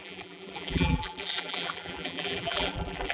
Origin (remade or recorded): remade